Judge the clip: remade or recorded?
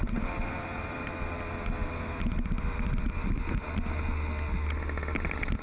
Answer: recorded